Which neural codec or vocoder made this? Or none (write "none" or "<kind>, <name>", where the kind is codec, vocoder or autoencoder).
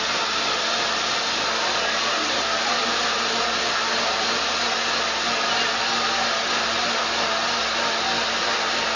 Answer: none